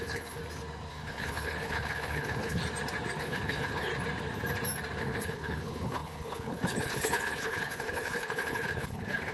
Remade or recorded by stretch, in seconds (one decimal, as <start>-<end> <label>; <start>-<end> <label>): 0.0-0.4 remade; 0.4-0.9 recorded; 0.9-2.6 remade; 2.6-3.2 recorded; 3.2-3.9 remade; 3.9-5.0 recorded; 5.0-9.3 remade